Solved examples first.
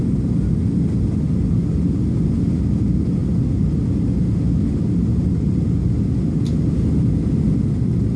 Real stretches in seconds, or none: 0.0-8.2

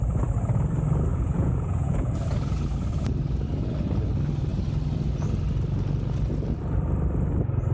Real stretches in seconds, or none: 0.0-1.1; 2.1-7.7

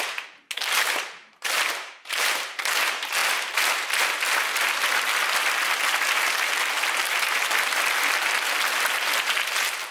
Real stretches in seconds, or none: 0.0-1.2; 2.6-9.9

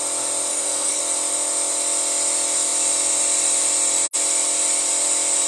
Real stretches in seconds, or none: 0.0-0.5; 1.0-5.5

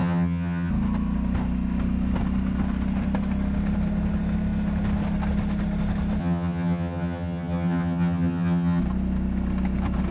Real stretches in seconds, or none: 0.7-6.2; 8.8-10.1